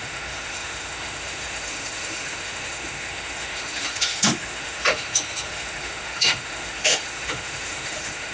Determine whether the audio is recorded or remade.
remade